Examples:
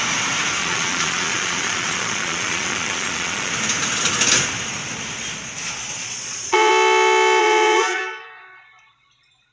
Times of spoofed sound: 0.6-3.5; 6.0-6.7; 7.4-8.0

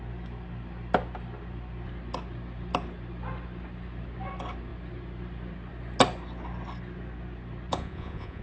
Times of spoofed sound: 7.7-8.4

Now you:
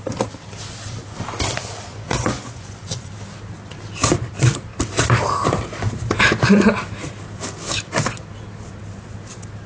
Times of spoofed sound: 1.9-3.1